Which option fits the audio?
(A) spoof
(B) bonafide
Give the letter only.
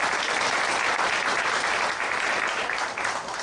B